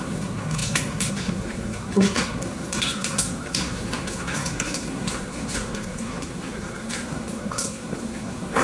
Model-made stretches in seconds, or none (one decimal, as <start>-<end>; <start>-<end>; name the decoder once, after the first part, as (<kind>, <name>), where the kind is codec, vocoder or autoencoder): 0.0-8.6 (codec, SNAC)